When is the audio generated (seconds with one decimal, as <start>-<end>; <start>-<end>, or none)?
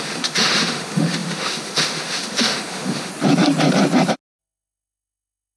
0.0-3.1; 4.4-5.6